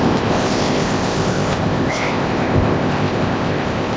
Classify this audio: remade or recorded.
remade